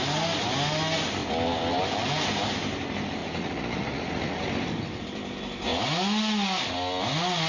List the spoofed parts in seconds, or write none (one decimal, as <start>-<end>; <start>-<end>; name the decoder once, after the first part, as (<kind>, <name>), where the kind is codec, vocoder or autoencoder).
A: 3.2-4.5 (vocoder, Vocos)